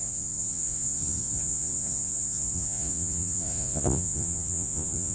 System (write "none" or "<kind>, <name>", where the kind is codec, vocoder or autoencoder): vocoder, Vocos